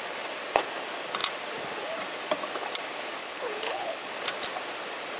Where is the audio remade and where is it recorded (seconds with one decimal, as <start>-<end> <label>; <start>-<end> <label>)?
0.0-3.2 recorded; 3.2-4.1 remade; 4.1-5.2 recorded